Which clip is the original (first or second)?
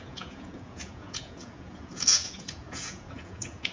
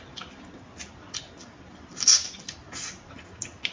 second